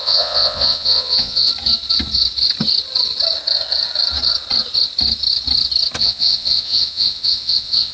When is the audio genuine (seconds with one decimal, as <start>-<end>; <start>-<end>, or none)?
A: 1.5-6.0